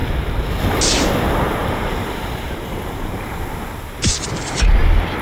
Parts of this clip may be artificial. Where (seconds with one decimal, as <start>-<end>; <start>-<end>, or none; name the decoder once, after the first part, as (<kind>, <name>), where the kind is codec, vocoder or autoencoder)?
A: 1.6-4.7 (vocoder, BigVGAN v2)